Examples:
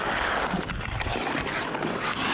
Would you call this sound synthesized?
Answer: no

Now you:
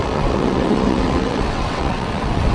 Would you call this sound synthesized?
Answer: yes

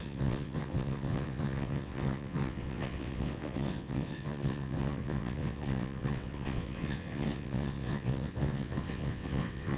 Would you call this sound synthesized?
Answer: yes